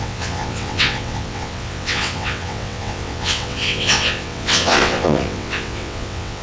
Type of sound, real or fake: fake